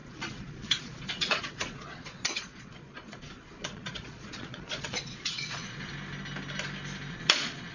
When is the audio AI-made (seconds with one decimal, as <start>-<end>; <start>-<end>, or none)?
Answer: 0.0-5.9; 7.1-7.7